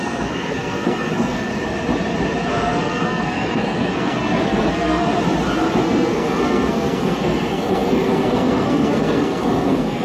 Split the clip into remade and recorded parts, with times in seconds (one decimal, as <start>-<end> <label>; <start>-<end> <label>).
0.0-1.5 remade; 1.5-2.5 recorded; 2.5-5.1 remade; 5.1-5.8 recorded; 5.8-10.0 remade